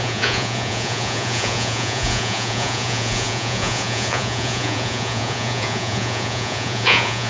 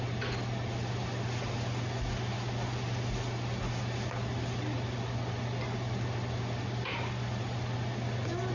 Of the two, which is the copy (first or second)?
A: first